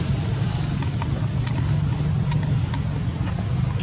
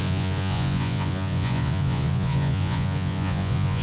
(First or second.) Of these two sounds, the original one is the first